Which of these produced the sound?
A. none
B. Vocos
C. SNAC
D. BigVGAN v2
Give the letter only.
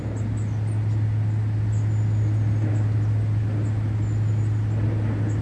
A